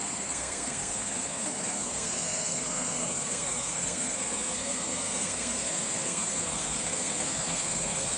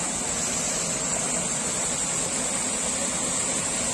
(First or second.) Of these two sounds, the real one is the second